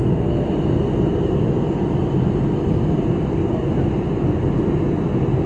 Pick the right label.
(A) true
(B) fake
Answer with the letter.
A